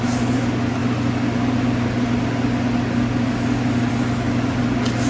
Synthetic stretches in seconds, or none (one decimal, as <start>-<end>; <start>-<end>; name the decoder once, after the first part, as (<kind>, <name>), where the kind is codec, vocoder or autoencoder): none